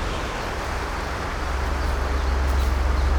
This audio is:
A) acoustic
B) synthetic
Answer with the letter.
A